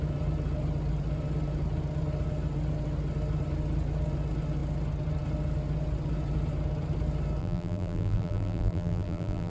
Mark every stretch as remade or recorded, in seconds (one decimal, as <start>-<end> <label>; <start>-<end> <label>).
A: 0.0-7.4 recorded; 7.4-9.5 remade